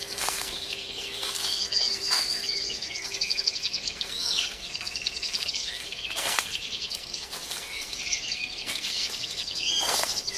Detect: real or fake fake